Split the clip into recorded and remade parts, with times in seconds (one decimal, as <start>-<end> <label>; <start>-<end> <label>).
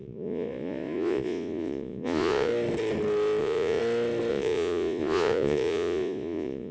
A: 0.0-2.5 remade; 2.5-3.4 recorded; 3.4-3.8 remade; 3.8-4.3 recorded; 4.3-6.7 remade